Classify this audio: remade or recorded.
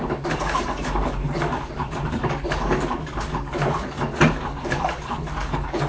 remade